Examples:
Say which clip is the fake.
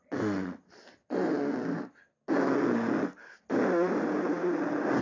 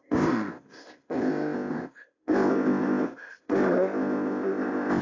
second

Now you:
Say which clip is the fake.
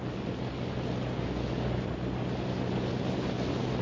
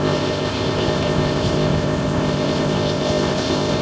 second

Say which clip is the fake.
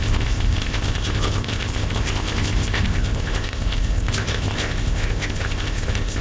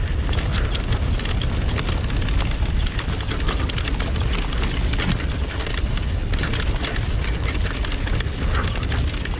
first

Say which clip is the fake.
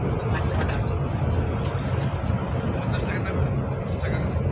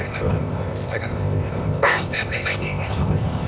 second